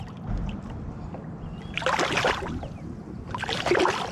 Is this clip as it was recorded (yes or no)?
yes